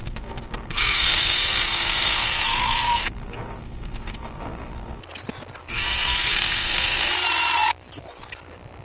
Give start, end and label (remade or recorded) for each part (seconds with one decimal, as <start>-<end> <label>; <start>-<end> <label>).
0.0-5.0 remade; 5.0-5.7 recorded; 5.7-7.1 remade; 7.1-8.8 recorded